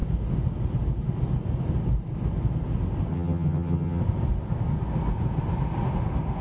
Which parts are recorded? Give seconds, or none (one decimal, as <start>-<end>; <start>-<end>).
0.0-3.1; 4.0-6.4